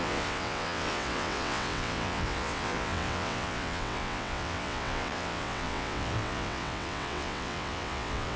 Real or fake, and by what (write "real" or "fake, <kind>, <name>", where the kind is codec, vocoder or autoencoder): fake, vocoder, WaveNeXt